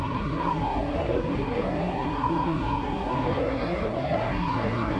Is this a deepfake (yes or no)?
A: yes